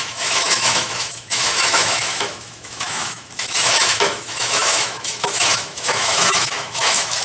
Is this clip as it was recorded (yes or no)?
no